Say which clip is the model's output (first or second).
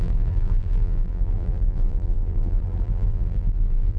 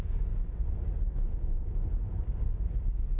first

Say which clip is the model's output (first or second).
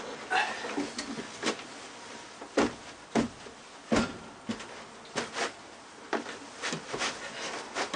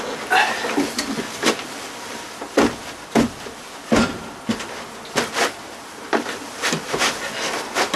second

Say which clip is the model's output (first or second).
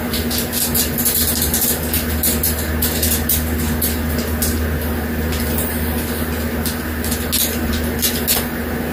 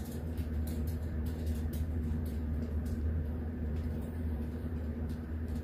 second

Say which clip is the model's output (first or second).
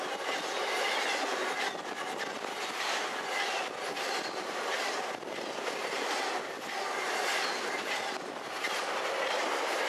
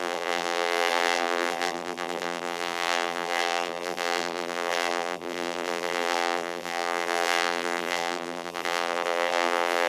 second